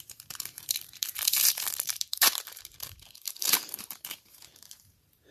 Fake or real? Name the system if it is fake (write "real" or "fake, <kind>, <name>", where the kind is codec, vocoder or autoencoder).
fake, vocoder, BigVGAN v2